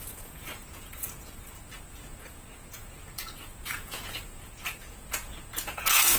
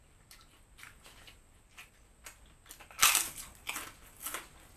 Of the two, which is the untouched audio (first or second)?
second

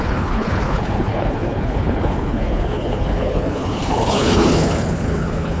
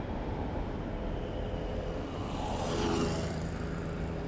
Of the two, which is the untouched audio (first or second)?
second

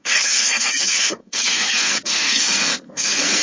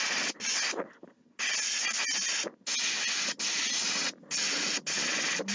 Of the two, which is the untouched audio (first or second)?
second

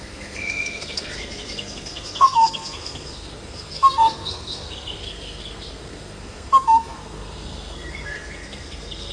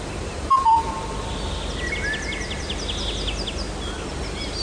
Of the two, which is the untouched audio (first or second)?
second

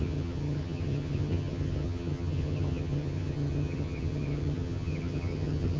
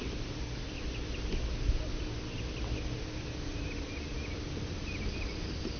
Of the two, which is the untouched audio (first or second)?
second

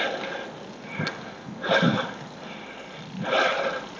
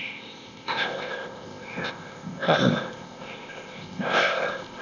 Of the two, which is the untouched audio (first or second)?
first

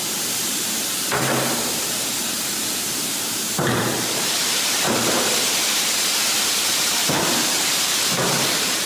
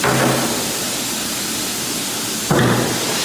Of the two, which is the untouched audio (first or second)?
second